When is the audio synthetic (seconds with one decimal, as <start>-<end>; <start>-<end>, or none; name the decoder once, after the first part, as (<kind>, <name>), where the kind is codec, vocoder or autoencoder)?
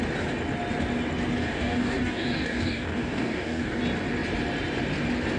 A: 1.4-3.8 (codec, DAC)